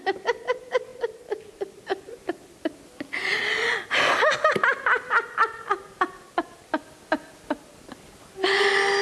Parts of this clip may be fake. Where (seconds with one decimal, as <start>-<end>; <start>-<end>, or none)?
none